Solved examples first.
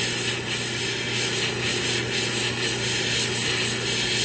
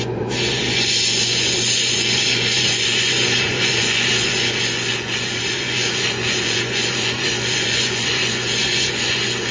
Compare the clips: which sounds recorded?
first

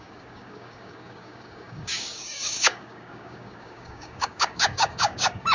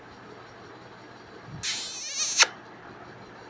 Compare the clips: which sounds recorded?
second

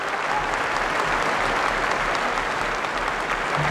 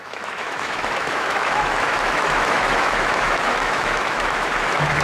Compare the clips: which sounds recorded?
first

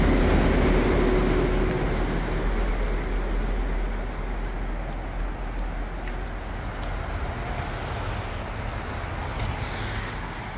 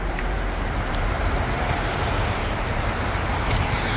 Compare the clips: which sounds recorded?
first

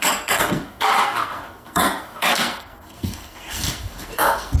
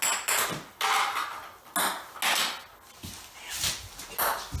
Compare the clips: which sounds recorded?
second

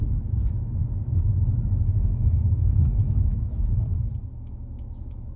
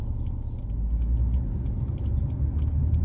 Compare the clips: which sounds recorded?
second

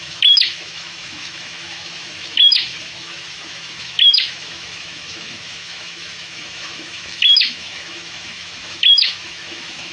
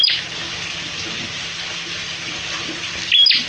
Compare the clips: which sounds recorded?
second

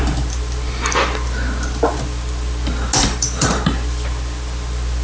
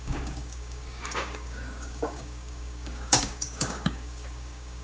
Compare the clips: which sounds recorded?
first